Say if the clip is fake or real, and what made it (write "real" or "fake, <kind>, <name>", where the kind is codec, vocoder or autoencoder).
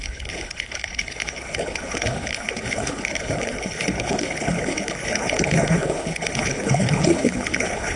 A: fake, codec, HILCodec